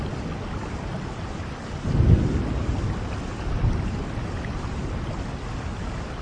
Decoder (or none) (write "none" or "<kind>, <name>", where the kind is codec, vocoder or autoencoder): none